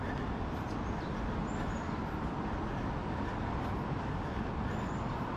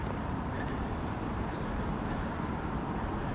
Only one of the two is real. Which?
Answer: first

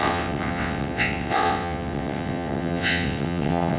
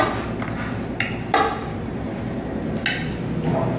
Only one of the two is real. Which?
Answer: second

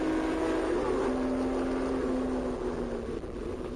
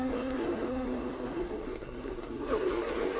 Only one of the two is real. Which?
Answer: first